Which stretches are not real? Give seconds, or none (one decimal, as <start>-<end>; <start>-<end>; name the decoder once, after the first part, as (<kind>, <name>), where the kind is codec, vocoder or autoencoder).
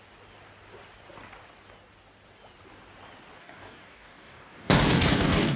3.4-5.6 (codec, DAC)